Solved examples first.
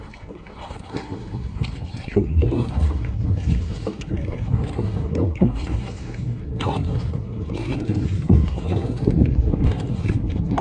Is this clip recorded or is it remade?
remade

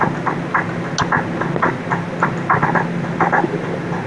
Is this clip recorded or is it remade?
recorded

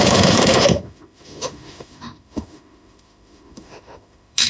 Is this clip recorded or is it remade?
remade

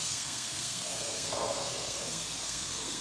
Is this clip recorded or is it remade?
remade